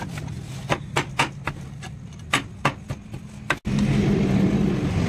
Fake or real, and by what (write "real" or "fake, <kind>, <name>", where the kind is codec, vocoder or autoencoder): real